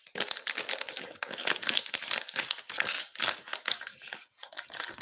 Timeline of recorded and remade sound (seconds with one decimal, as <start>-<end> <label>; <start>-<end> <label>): 0.0-5.0 recorded